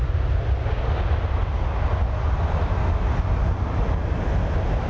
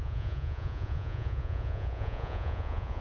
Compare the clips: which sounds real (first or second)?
first